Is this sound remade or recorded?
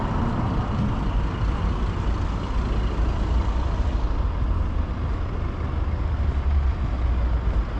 recorded